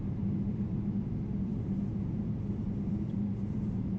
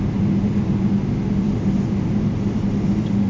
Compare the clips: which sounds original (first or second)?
second